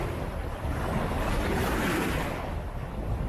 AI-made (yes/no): no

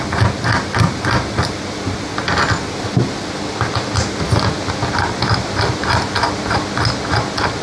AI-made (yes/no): no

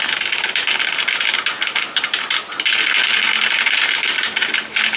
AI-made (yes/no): no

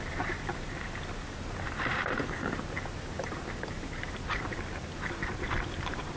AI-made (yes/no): yes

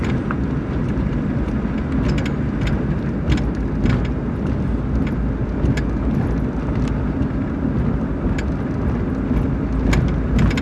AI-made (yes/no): no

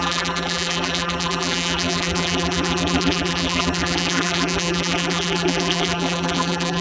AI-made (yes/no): yes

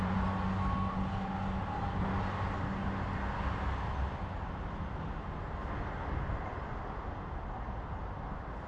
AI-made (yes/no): no